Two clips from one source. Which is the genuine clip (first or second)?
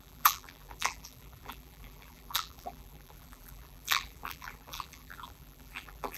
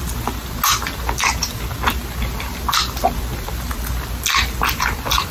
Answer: second